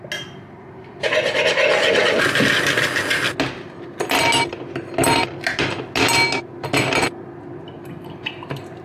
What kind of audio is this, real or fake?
real